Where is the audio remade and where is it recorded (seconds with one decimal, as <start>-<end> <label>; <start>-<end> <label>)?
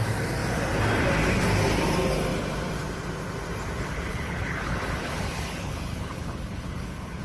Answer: 0.0-4.1 recorded; 4.1-7.2 remade